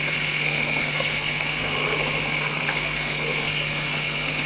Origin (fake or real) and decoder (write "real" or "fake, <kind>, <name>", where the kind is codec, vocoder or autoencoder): fake, codec, SNAC